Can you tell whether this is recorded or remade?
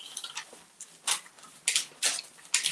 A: recorded